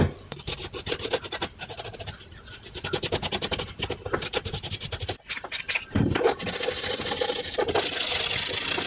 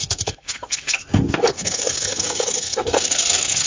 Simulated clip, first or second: second